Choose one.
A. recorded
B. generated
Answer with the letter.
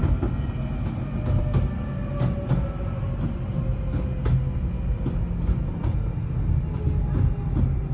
A